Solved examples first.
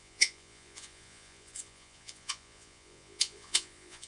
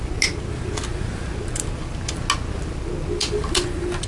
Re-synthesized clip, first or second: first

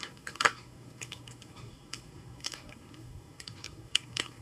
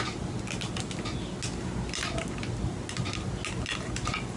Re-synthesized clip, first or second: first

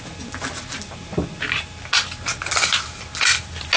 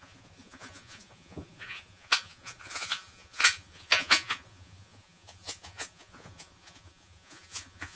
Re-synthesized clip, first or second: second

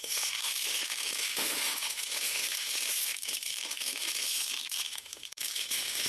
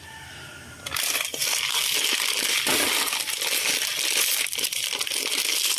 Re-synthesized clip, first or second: first